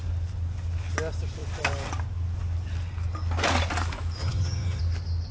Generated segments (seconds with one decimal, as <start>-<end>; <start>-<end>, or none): 4.2-4.8